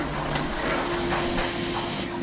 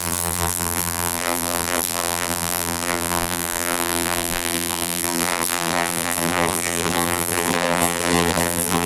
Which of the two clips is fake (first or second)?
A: second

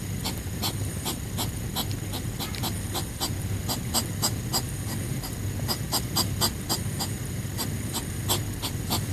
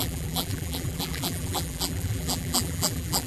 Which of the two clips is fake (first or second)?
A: second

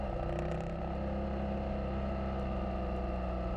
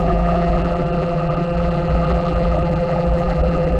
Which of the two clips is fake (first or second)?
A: second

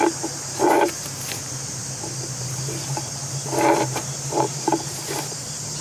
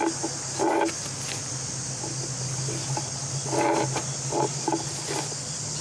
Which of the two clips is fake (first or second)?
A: first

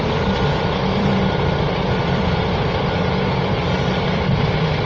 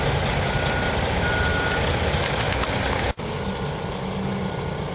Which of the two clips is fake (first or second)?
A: first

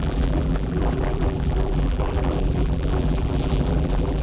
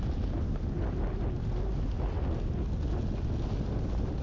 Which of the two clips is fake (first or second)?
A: first